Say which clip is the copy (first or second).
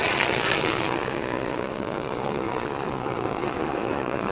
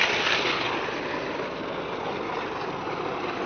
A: first